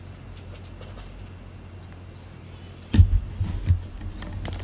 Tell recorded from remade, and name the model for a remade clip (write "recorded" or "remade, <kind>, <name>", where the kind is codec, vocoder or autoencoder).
recorded